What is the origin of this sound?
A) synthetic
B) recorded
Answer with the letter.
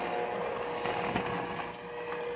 B